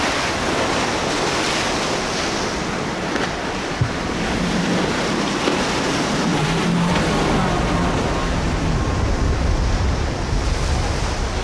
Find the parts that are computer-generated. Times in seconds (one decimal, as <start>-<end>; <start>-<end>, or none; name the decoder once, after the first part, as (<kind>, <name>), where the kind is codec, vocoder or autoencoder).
5.5-6.9 (vocoder, BigVGAN v2)